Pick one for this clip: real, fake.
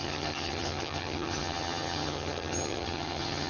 fake